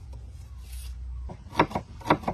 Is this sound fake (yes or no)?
no